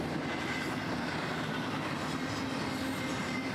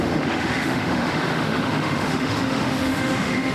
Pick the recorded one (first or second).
first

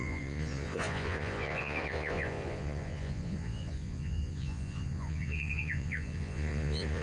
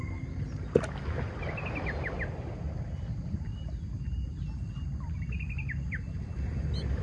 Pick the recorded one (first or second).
second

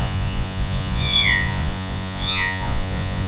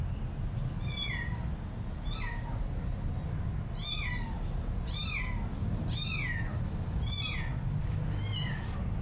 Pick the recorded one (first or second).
second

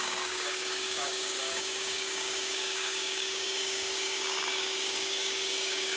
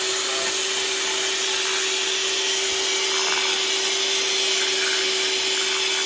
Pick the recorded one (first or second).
second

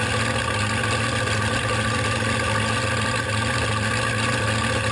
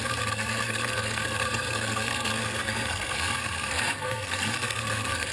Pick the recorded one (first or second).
first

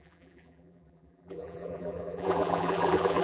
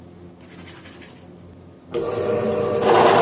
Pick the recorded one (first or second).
second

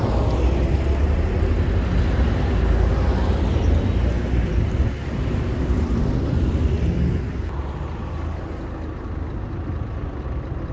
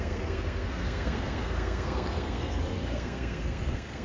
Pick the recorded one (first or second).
first